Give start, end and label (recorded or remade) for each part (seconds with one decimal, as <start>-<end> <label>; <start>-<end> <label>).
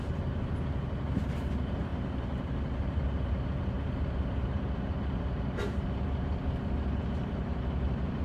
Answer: 0.0-8.2 remade